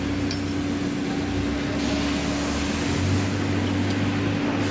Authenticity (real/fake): real